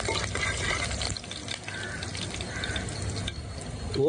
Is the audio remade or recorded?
recorded